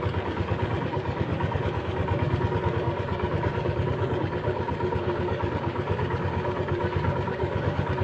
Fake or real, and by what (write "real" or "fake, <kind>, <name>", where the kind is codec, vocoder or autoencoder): fake, codec, DAC